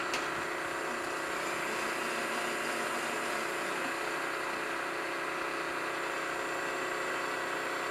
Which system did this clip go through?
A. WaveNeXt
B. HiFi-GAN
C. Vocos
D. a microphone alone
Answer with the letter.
D